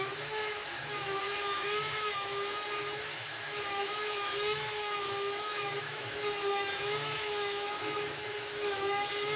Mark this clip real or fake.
fake